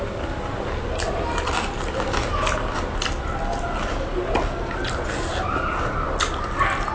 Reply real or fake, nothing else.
real